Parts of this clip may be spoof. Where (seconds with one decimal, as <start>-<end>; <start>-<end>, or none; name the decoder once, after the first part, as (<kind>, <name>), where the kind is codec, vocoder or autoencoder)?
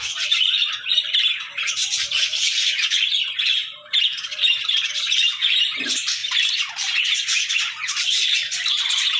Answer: 0.0-9.2 (vocoder, BigVGAN v2)